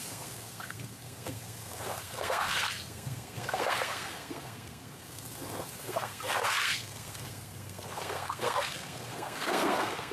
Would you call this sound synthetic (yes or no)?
yes